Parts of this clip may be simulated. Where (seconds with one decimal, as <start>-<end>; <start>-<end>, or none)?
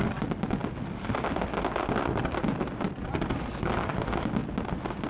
none